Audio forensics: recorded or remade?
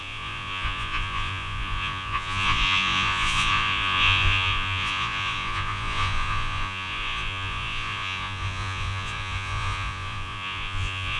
remade